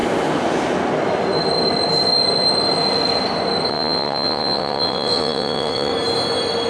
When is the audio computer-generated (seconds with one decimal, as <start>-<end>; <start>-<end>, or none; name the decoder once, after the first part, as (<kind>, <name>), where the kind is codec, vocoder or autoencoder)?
3.7-5.9 (vocoder, WaveNeXt)